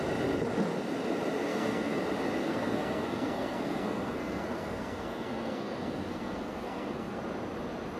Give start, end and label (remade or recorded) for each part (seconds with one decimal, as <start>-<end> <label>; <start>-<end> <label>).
0.0-1.5 recorded; 1.5-2.0 remade; 2.0-2.4 recorded; 2.4-7.2 remade; 7.2-8.0 recorded